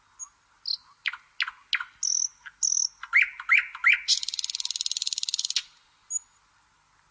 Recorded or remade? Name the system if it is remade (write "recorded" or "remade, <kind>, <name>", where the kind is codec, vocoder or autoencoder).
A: recorded